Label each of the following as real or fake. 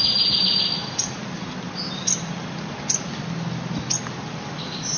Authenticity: real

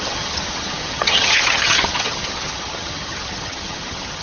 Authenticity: fake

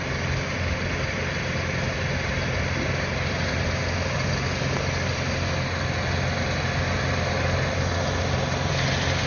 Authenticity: real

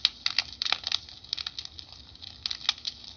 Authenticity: real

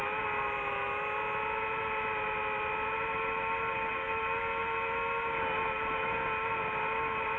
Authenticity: real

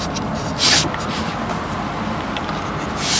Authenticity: real